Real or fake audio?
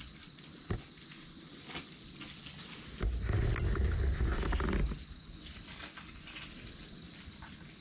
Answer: real